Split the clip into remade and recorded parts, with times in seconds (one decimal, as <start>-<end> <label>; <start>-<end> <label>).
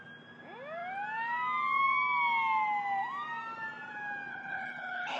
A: 0.0-4.3 recorded; 4.3-5.2 remade